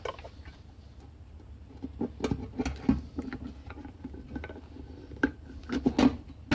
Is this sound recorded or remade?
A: recorded